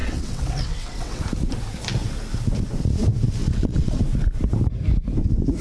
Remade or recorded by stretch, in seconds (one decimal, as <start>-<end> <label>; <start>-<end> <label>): 0.0-1.2 remade; 1.2-3.4 recorded; 3.4-4.0 remade; 4.0-5.6 recorded